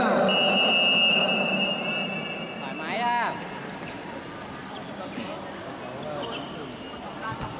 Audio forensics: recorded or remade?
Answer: recorded